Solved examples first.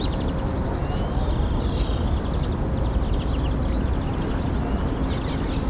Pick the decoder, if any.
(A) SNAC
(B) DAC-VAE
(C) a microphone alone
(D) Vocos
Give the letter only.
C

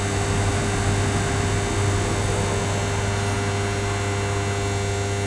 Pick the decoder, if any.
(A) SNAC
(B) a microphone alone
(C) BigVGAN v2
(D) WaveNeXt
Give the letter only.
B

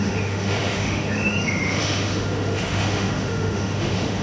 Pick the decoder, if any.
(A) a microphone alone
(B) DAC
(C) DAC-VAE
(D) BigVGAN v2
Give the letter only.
C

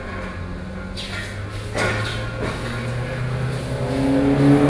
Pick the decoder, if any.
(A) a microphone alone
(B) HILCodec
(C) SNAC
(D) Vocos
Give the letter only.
A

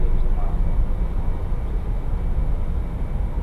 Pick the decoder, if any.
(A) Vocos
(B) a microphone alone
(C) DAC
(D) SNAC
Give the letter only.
B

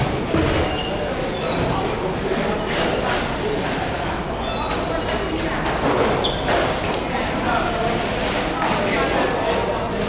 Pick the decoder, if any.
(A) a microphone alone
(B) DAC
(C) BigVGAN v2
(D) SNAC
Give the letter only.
A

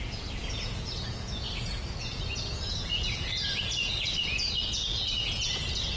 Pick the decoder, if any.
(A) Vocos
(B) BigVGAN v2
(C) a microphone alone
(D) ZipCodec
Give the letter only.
A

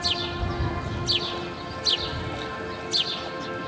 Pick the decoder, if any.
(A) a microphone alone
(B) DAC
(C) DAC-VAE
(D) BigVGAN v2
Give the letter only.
A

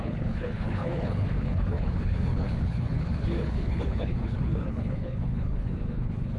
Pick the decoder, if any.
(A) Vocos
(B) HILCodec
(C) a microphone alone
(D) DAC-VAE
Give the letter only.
B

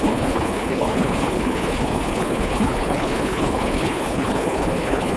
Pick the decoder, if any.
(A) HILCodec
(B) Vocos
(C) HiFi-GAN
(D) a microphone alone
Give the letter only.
A